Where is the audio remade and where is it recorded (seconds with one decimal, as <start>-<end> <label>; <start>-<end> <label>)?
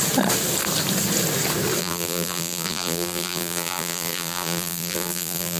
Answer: 0.0-1.8 recorded; 1.8-5.6 remade